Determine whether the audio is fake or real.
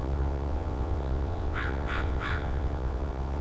fake